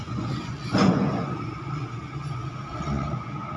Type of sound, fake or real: fake